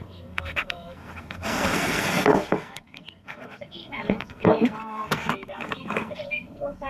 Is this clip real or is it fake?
fake